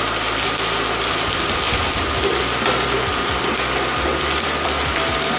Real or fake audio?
real